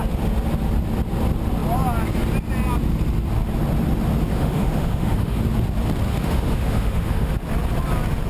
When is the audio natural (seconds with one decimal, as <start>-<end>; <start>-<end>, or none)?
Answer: 0.0-4.3; 5.4-6.1; 7.3-8.3